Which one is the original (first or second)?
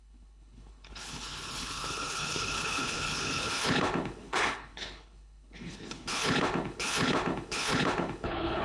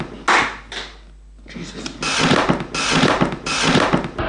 second